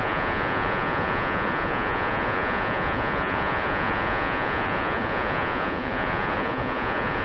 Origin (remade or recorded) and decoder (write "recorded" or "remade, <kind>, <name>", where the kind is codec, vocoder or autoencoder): remade, vocoder, Vocos